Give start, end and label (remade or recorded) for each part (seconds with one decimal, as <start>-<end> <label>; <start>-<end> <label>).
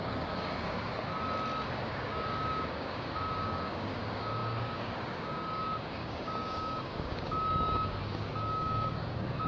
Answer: 0.0-1.1 remade; 1.1-1.7 recorded; 1.7-9.5 remade